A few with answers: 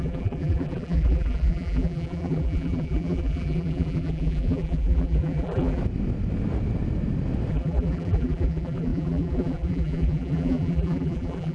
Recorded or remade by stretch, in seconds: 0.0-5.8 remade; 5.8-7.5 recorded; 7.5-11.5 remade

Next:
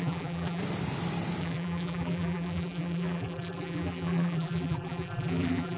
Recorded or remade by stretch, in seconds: 0.0-0.6 remade; 0.6-1.4 recorded; 1.4-5.8 remade

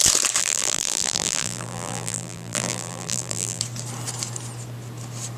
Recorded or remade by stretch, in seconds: 0.0-0.4 recorded; 0.4-3.6 remade; 3.6-5.4 recorded

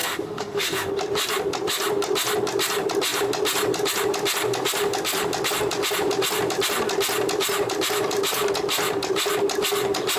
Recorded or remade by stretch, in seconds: 0.0-0.9 remade; 0.9-10.2 recorded